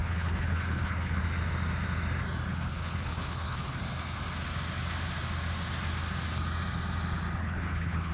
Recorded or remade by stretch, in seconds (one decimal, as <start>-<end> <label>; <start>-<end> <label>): 0.0-1.2 remade; 1.2-2.5 recorded; 2.5-3.8 remade; 3.8-7.4 recorded; 7.4-8.1 remade